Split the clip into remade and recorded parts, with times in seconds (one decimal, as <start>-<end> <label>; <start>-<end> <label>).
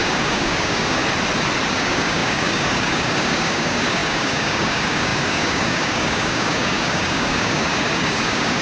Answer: 0.0-1.0 remade; 1.0-1.7 recorded; 1.7-8.6 remade